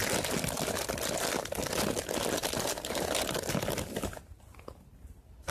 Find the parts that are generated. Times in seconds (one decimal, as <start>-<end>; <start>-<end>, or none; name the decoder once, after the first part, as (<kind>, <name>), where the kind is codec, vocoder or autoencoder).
none